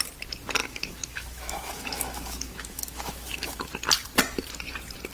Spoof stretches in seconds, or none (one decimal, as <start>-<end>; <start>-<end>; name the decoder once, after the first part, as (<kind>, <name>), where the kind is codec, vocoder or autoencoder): 0.6-3.7 (autoencoder, DAC-VAE)